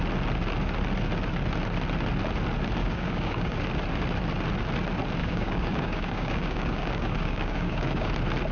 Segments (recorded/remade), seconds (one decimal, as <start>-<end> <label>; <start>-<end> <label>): 0.0-2.8 recorded; 2.8-3.6 remade; 3.6-5.2 recorded; 5.2-8.1 remade; 8.1-8.5 recorded